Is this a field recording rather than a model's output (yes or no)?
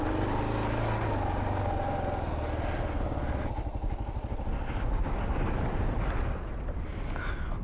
yes